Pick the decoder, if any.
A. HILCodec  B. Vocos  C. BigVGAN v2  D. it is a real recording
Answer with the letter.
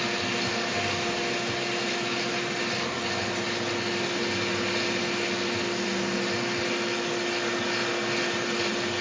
D